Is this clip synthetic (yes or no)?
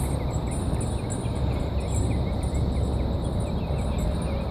no